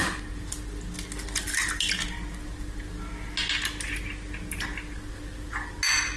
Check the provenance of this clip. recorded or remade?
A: recorded